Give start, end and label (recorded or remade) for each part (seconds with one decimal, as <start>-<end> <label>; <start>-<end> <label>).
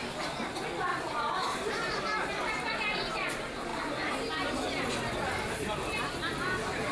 0.0-0.9 recorded; 0.9-1.7 remade; 1.7-6.9 recorded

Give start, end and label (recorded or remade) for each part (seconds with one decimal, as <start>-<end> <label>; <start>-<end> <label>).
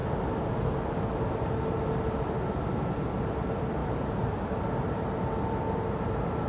0.0-3.8 recorded; 3.8-4.6 remade; 4.6-6.5 recorded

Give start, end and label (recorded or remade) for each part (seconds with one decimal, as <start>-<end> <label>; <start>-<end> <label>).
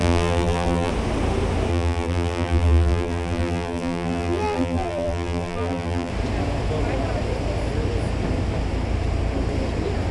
0.0-0.9 remade; 0.9-1.7 recorded; 1.7-6.1 remade; 6.1-10.1 recorded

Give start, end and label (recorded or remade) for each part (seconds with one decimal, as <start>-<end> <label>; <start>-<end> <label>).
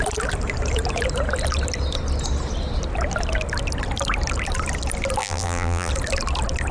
0.0-5.2 recorded; 5.2-5.9 remade; 5.9-6.7 recorded